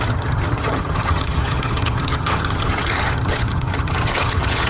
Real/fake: fake